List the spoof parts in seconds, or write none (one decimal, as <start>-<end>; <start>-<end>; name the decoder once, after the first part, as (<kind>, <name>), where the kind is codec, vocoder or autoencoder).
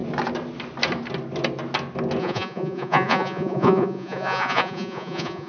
2.2-5.5 (vocoder, Vocos)